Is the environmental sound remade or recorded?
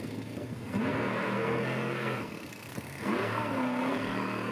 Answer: remade